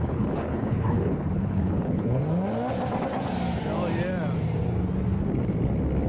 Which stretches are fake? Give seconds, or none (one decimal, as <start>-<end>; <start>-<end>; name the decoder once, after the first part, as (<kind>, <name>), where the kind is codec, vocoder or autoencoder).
0.0-2.2 (codec, HILCodec)